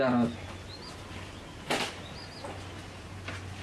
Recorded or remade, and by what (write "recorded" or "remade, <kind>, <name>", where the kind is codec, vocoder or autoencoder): recorded